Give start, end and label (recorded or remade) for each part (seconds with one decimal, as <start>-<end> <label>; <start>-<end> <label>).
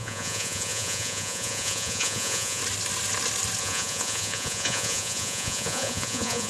0.0-2.6 remade; 2.6-3.6 recorded; 3.6-6.5 remade